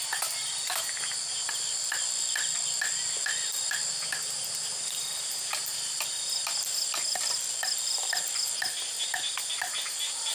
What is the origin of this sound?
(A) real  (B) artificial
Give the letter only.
A